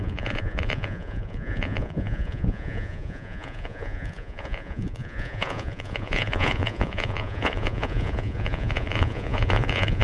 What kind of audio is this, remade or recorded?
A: remade